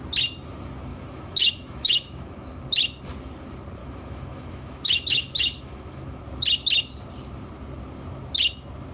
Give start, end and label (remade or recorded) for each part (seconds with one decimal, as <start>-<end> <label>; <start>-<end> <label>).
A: 0.0-0.9 recorded; 0.9-2.6 remade; 2.6-3.8 recorded; 3.8-6.2 remade; 6.2-8.9 recorded